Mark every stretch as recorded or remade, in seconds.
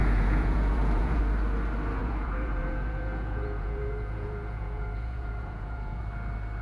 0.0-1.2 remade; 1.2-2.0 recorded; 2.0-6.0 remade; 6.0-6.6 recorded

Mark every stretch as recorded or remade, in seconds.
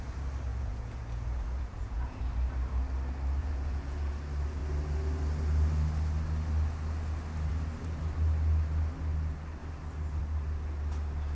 0.0-0.5 recorded; 0.5-2.3 remade; 2.3-3.4 recorded; 3.4-4.1 remade; 4.1-11.3 recorded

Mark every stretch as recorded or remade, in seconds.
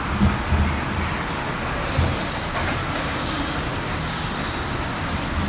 0.0-2.8 recorded; 2.8-4.3 remade; 4.3-5.5 recorded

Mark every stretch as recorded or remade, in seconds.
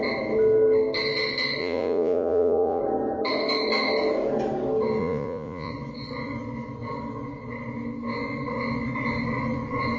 0.0-1.6 recorded; 1.6-2.8 remade; 2.8-5.0 recorded; 5.0-5.7 remade; 5.7-10.0 recorded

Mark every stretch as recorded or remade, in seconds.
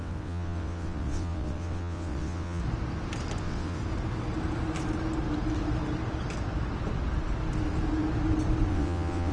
0.0-2.6 remade; 2.6-3.4 recorded; 3.4-3.8 remade; 3.8-8.7 recorded; 8.7-9.3 remade